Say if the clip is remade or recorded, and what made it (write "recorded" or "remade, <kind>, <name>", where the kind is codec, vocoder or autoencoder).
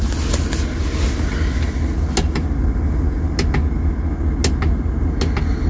recorded